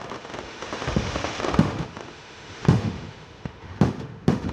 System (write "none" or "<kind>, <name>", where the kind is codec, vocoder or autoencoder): autoencoder, DAC-VAE